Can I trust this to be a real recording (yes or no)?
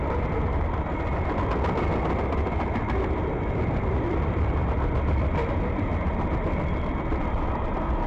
yes